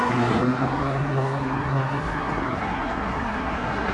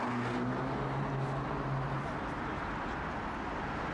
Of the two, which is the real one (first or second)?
second